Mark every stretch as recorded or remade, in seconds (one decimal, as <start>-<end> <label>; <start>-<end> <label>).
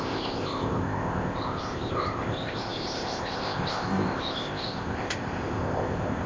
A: 0.0-6.3 remade